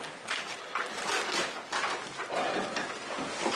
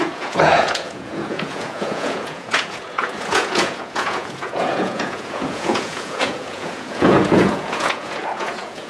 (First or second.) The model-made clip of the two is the second